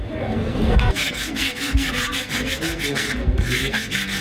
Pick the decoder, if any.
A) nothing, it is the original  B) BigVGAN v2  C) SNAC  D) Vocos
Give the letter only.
C